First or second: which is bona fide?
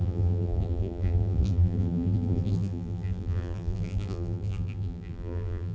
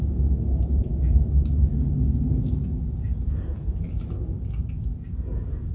second